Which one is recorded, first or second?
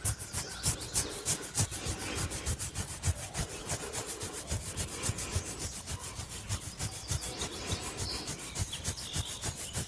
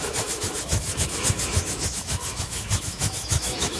first